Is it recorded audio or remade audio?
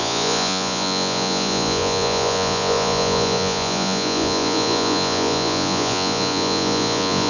remade